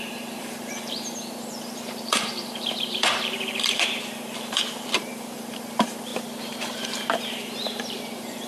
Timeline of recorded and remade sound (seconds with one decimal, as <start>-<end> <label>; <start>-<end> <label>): 0.0-6.1 remade; 6.1-7.3 recorded; 7.3-8.5 remade